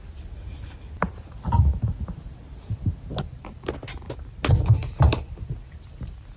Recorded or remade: recorded